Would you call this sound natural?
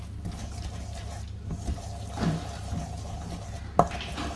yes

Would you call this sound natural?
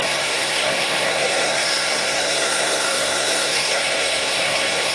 no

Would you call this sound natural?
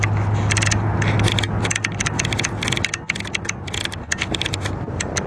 yes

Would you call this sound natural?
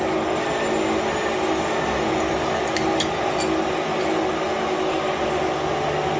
yes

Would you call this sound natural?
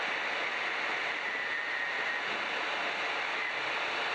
yes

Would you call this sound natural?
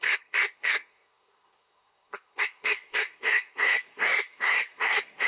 no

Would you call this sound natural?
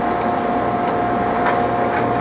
yes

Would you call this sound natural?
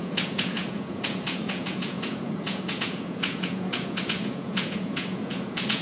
no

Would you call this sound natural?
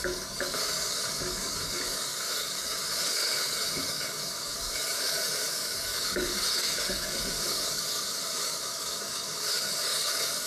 no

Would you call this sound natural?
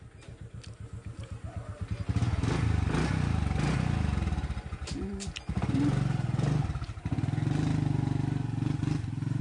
yes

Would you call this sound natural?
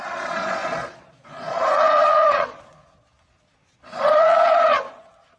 no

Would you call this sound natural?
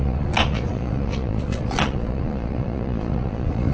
no